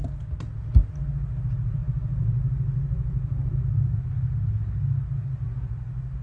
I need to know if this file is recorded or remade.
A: recorded